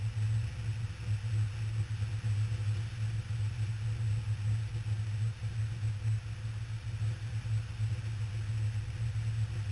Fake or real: real